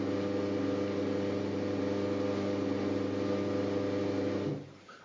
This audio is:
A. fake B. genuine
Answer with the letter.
B